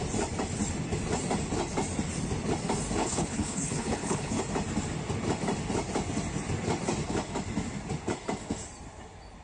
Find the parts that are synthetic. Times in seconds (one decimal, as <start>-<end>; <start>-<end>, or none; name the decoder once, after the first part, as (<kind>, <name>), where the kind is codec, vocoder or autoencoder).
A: 3.0-4.4 (codec, HILCodec)